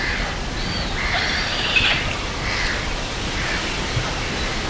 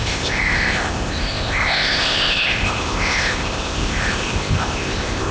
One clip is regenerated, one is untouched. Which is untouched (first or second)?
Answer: first